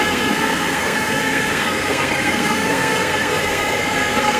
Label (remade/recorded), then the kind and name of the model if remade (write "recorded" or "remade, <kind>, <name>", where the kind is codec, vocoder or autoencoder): remade, codec, SNAC